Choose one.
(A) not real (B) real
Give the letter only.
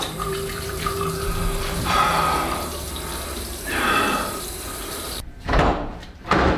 A